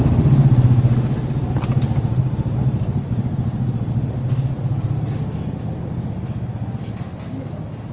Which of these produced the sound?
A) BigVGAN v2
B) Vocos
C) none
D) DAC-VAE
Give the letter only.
C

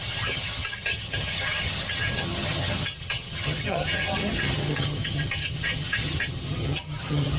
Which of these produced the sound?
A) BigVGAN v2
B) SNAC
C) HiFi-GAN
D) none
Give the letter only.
C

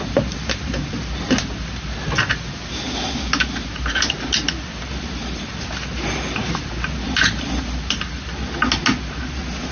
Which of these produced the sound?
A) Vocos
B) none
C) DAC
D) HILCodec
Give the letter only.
B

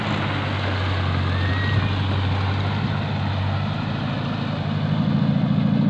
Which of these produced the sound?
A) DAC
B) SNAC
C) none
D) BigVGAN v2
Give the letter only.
C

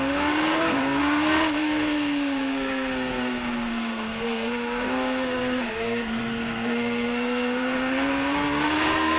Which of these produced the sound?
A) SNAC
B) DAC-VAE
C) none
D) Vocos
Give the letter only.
A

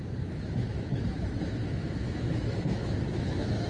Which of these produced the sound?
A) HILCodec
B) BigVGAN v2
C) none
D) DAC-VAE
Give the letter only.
D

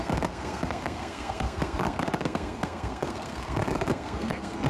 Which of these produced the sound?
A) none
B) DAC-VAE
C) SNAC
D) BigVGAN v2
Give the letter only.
C